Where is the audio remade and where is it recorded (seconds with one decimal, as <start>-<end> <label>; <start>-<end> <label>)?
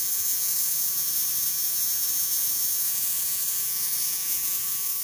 0.0-5.0 remade